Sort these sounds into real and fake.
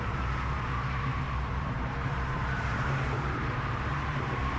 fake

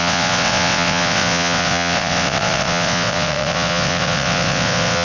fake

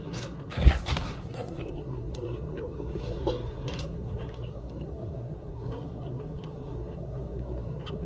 fake